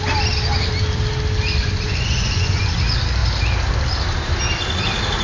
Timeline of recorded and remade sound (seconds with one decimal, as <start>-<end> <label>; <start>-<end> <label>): 0.0-1.6 recorded; 1.6-2.6 remade; 2.6-5.2 recorded